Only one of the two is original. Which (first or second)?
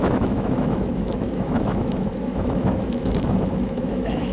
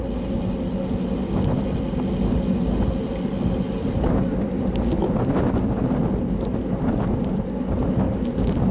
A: second